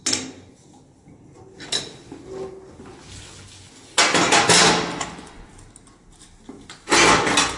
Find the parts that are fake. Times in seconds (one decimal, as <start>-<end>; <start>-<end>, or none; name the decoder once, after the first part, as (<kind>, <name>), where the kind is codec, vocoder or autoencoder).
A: 5.0-5.5 (vocoder, Vocos)